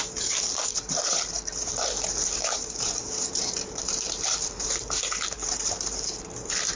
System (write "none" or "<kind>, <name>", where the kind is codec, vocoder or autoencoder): vocoder, BigVGAN v2